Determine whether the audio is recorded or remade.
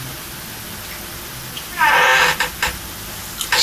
recorded